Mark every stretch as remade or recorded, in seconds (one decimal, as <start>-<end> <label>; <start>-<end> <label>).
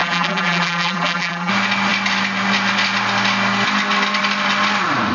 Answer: 0.0-1.5 remade; 1.5-5.1 recorded